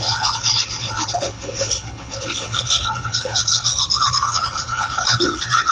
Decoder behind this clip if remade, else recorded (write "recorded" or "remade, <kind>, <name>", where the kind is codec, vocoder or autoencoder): remade, codec, HILCodec